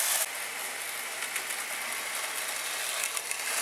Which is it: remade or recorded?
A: recorded